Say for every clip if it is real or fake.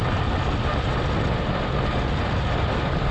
real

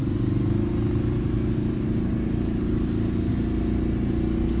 real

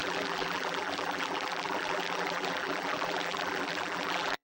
fake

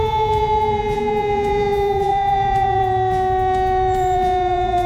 fake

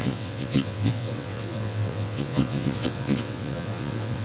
fake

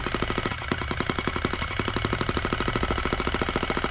real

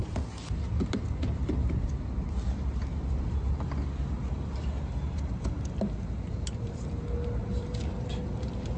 real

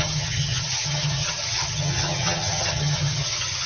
fake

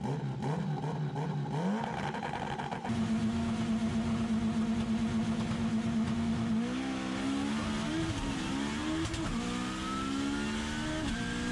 real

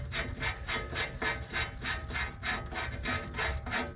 real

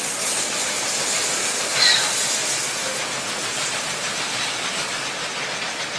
real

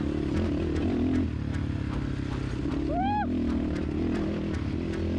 real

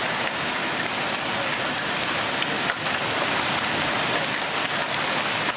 real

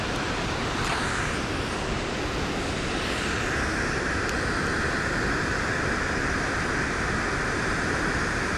real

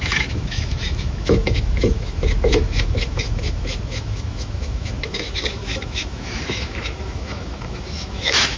fake